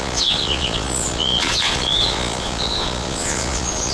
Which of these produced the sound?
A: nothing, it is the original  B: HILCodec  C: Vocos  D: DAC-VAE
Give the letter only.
C